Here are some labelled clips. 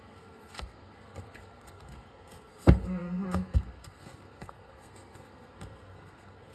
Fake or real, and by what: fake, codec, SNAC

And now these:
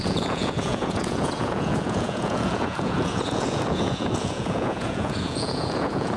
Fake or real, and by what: fake, vocoder, Vocos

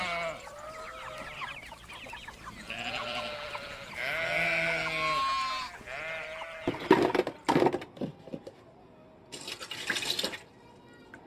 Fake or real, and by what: real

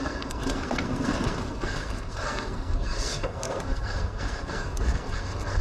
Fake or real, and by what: fake, codec, SNAC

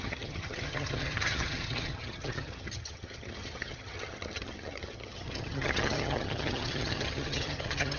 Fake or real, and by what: fake, vocoder, HiFi-GAN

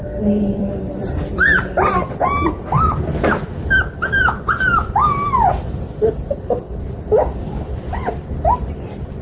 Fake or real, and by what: fake, vocoder, BigVGAN v2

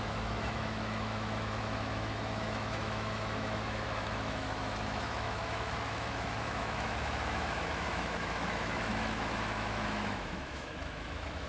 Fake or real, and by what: fake, autoencoder, DAC-VAE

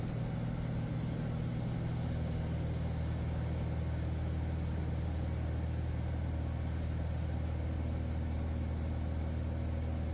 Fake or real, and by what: real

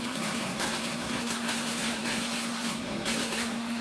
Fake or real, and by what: fake, codec, SNAC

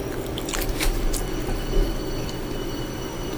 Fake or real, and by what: fake, vocoder, BigVGAN v2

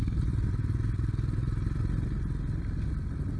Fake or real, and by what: real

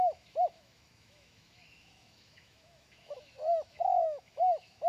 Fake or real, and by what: fake, autoencoder, DAC-VAE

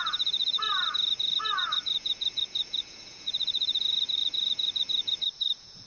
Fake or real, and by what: fake, vocoder, Vocos